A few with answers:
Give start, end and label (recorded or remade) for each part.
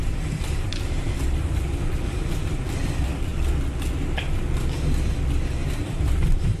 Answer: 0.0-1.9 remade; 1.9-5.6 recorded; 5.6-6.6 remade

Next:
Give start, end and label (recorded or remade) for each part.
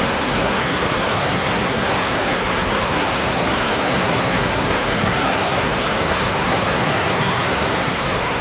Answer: 0.0-8.4 remade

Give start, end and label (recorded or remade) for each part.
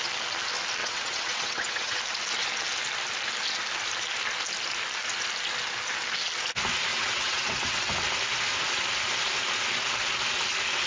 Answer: 0.0-0.8 recorded; 0.8-2.0 remade; 2.0-6.9 recorded; 6.9-7.9 remade; 7.9-10.9 recorded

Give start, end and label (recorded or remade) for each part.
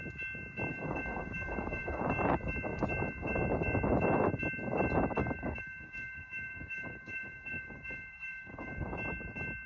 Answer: 0.0-0.7 recorded; 0.7-2.0 remade; 2.0-5.2 recorded; 5.2-8.9 remade; 8.9-9.7 recorded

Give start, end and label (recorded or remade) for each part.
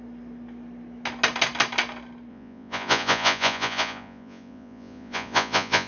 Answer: 0.0-2.3 recorded; 2.3-5.9 remade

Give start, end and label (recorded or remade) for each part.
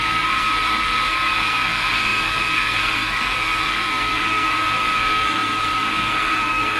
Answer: 0.0-6.8 remade